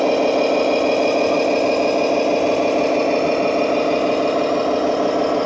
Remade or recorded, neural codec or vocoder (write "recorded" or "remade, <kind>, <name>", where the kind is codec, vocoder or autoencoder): recorded